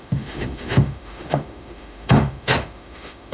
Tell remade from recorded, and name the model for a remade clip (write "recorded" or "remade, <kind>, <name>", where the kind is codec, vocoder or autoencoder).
remade, autoencoder, DAC-VAE